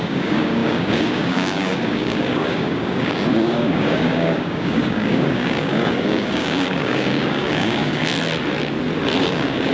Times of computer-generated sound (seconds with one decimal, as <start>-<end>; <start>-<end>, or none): 0.0-8.1; 9.2-9.7